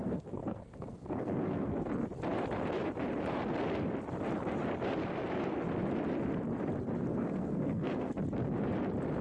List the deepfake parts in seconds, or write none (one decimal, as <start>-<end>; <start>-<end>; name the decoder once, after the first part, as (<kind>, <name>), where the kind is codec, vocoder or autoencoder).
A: 0.0-1.9 (codec, SNAC); 7.1-8.1